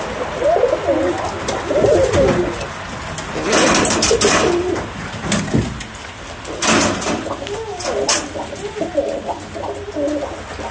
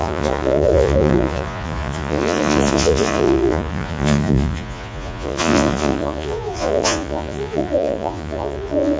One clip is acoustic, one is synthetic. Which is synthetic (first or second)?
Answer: second